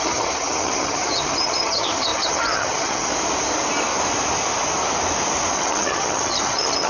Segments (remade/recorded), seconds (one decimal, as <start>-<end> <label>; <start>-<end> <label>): 0.0-3.1 remade; 3.1-5.5 recorded; 5.5-6.9 remade